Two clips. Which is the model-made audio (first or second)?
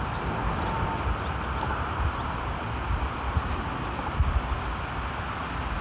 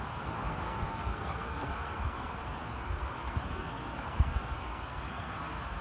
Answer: second